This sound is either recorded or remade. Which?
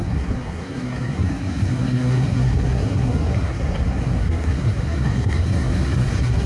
remade